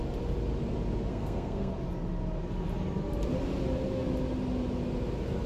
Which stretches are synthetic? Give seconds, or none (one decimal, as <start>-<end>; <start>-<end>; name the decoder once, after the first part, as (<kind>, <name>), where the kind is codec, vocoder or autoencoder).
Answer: 1.1-1.7 (codec, SNAC)